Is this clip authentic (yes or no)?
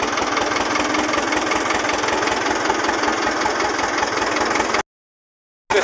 yes